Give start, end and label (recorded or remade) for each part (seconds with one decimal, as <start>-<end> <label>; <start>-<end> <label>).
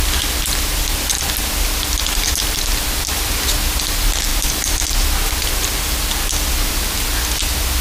0.0-7.8 recorded